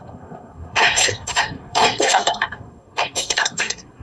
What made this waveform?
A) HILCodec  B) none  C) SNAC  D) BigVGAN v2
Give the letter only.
C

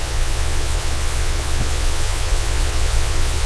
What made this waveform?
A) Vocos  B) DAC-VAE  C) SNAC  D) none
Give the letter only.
A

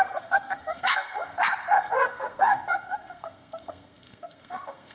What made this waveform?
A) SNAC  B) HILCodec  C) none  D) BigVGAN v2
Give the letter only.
A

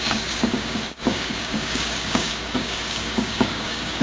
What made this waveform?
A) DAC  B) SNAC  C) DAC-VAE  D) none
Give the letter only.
A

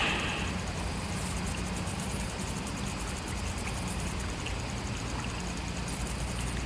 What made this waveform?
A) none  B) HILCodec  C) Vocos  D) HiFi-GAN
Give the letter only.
A